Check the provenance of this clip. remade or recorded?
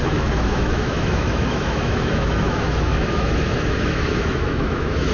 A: remade